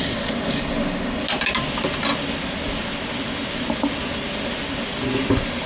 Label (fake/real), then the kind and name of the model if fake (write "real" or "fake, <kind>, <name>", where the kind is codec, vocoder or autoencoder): real